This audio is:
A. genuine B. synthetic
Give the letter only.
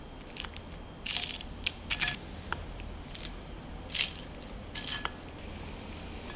A